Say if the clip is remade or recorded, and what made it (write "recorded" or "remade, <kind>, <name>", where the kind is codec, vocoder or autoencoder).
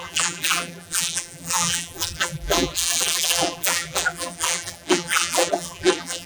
remade, vocoder, BigVGAN v2